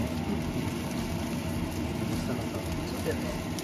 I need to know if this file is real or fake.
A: real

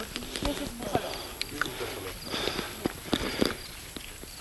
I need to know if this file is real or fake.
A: real